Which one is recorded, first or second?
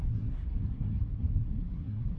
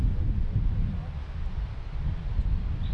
second